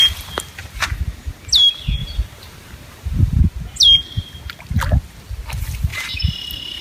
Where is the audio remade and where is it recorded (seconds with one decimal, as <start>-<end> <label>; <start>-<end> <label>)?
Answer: 0.0-0.6 recorded; 0.6-1.4 remade; 1.4-2.0 recorded; 2.0-3.4 remade; 3.4-5.9 recorded; 5.9-6.8 remade